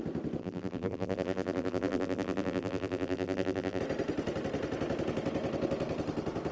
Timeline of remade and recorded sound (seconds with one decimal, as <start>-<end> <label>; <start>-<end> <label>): 0.0-0.4 recorded; 0.4-3.8 remade; 3.8-6.5 recorded